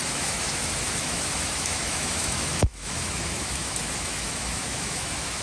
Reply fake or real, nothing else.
fake